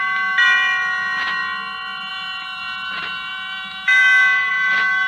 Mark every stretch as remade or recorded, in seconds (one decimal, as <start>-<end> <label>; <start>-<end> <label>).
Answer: 0.0-5.1 recorded